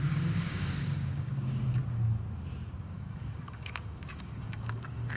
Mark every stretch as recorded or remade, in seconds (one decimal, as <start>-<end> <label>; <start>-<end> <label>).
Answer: 0.0-1.8 remade; 1.8-2.8 recorded; 2.8-5.2 remade